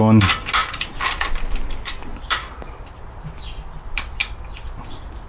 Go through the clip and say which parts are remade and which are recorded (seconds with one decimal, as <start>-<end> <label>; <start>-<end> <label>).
0.0-0.6 recorded; 0.6-1.2 remade; 1.2-2.1 recorded; 2.1-3.2 remade; 3.2-5.3 recorded